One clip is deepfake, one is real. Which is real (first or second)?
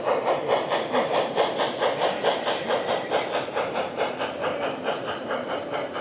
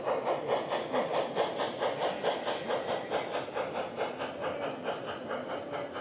second